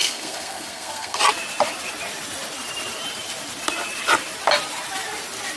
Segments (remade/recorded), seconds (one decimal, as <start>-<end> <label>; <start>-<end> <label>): 0.0-1.2 remade; 1.2-5.6 recorded